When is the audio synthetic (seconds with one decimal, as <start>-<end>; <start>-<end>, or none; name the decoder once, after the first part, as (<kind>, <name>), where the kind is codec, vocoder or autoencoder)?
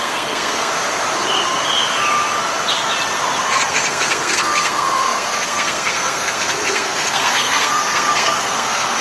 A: 0.0-0.7 (codec, SNAC); 3.7-9.0